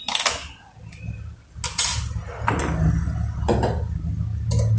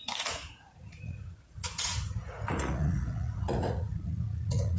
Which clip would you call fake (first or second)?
second